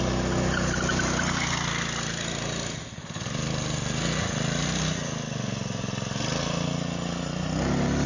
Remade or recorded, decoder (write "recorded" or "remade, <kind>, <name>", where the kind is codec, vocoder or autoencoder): recorded